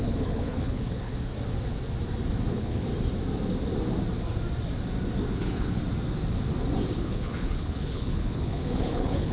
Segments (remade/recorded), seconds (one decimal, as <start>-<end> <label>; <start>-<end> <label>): 0.0-1.3 remade; 1.3-2.5 recorded; 2.5-2.9 remade; 2.9-5.3 recorded; 5.3-5.8 remade; 5.8-7.0 recorded; 7.0-9.3 remade